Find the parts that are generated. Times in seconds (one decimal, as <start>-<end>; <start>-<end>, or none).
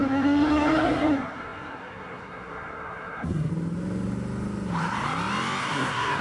0.0-3.5; 5.6-6.2